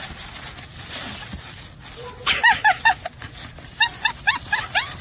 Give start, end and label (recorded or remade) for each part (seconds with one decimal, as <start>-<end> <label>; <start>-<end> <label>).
0.0-5.0 recorded